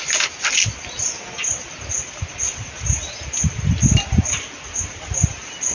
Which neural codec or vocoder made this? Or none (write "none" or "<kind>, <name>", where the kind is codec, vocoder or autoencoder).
none